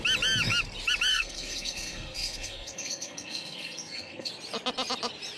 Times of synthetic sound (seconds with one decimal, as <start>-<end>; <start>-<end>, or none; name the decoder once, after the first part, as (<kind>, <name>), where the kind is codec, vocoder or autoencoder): 1.1-4.3 (codec, SNAC)